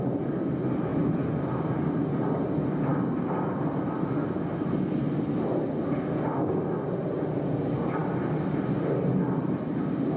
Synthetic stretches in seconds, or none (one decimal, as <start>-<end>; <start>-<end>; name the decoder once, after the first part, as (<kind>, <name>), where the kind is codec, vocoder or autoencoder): none

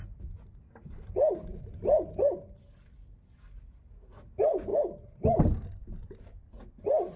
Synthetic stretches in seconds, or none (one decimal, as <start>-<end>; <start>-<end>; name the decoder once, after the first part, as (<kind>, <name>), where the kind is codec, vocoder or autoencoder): none

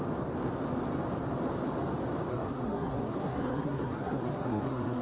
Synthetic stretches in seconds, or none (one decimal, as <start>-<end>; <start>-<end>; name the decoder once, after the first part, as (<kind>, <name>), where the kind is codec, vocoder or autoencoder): 2.3-5.0 (codec, SNAC)

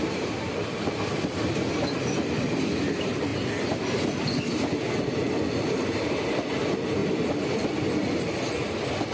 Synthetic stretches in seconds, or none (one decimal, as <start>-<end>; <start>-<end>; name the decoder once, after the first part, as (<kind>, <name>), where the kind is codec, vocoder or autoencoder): none